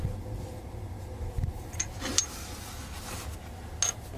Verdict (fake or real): real